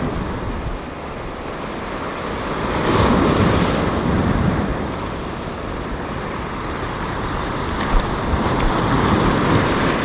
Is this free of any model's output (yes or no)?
yes